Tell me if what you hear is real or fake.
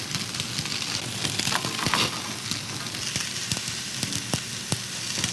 real